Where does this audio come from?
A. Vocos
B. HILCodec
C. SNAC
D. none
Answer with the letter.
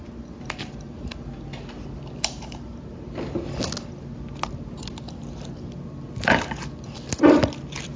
D